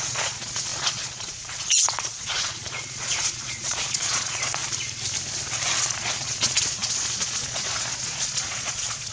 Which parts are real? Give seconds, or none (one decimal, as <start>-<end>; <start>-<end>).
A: 4.6-5.8